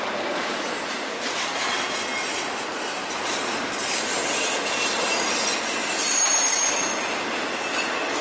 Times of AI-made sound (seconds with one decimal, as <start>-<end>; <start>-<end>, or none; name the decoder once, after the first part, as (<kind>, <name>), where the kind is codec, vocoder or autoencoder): none